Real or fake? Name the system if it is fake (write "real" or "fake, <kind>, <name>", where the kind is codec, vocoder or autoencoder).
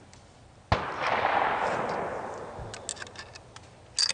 real